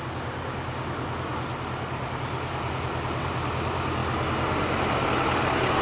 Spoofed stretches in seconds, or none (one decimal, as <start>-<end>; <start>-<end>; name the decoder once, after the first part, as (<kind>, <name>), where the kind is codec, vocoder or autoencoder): none